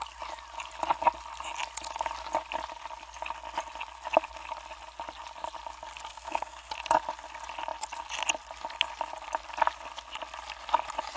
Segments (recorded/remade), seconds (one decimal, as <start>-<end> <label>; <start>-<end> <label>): 0.0-6.1 recorded; 6.1-6.7 remade; 6.7-11.2 recorded